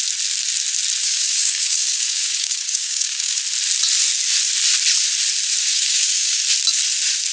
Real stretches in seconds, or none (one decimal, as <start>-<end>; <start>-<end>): 0.0-1.0; 3.4-5.6; 6.4-7.3